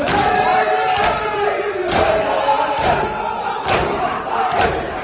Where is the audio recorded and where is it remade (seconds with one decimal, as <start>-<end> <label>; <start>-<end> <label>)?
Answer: 0.0-5.0 recorded